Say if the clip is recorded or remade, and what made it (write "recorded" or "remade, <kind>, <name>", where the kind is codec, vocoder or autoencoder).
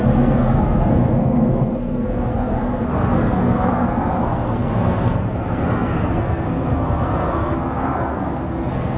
remade, codec, SNAC